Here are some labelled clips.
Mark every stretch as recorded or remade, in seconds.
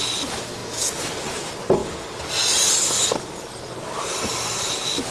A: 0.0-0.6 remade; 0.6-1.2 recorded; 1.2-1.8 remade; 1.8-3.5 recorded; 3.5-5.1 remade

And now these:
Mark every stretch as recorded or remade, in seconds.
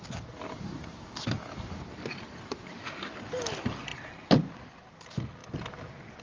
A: 0.0-6.2 recorded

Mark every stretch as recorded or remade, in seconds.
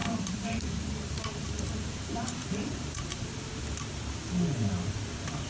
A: 0.0-3.3 remade; 3.3-5.5 recorded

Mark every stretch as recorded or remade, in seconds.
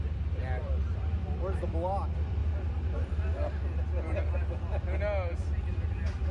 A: 0.0-0.6 recorded; 0.6-1.6 remade; 1.6-6.3 recorded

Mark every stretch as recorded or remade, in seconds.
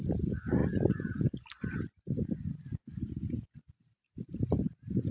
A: 0.0-0.6 remade; 0.6-3.7 recorded; 3.7-5.1 remade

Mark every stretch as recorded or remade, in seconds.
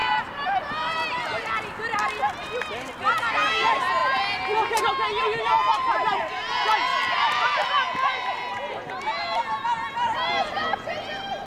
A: 0.0-0.7 remade; 0.7-11.5 recorded